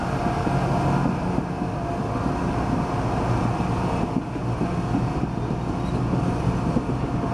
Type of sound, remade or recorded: recorded